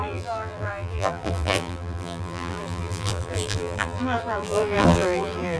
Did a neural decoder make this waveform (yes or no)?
yes